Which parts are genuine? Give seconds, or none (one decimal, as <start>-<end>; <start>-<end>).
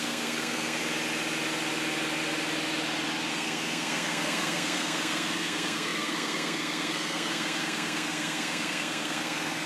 0.8-3.3